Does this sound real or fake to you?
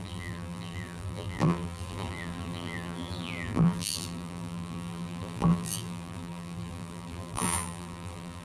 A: fake